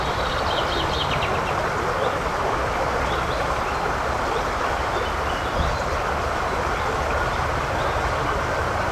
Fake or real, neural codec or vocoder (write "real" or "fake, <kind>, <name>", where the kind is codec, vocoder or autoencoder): real